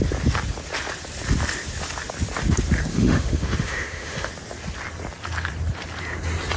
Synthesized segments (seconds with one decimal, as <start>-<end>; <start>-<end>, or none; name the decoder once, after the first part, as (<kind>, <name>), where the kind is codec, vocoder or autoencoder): 2.9-4.3 (autoencoder, DAC-VAE)